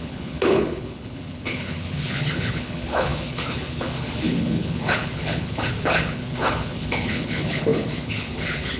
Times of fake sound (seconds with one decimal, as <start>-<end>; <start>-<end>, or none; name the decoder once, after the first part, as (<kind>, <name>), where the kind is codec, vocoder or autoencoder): 0.0-8.8 (codec, HILCodec)